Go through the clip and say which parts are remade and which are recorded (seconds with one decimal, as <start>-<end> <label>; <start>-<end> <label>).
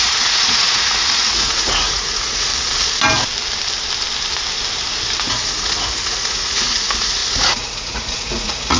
0.0-2.5 remade; 2.5-5.2 recorded; 5.2-8.8 remade